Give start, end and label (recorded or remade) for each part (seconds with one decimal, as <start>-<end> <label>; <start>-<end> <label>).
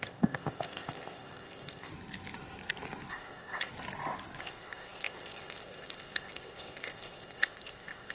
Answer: 0.0-1.9 remade; 1.9-3.1 recorded; 3.1-3.7 remade; 3.7-4.4 recorded; 4.4-8.1 remade